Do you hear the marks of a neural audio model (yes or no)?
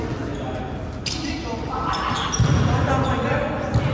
no